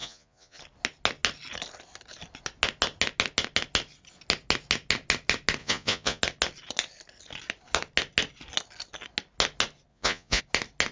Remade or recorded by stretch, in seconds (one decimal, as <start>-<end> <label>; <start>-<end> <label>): 0.0-0.6 remade; 0.6-5.6 recorded; 5.6-6.2 remade; 6.2-9.9 recorded; 9.9-10.4 remade; 10.4-10.9 recorded